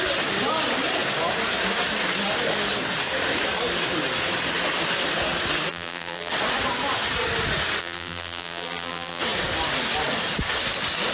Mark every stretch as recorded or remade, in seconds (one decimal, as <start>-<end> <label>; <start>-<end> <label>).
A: 0.0-5.7 recorded; 5.7-6.3 remade; 6.3-7.8 recorded; 7.8-9.2 remade; 9.2-11.1 recorded